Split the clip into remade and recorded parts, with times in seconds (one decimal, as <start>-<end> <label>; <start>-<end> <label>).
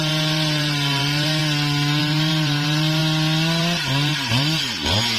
0.0-1.4 remade; 1.4-2.0 recorded; 2.0-3.0 remade; 3.0-3.6 recorded; 3.6-5.2 remade